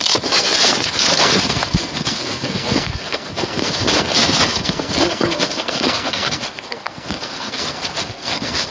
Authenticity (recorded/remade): remade